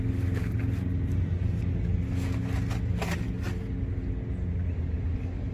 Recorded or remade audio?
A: recorded